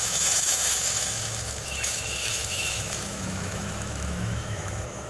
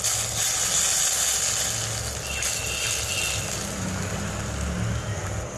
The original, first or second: second